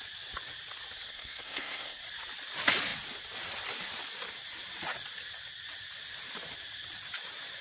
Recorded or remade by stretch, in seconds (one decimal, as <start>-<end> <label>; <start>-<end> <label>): 0.0-1.1 recorded; 1.1-2.0 remade; 2.0-7.6 recorded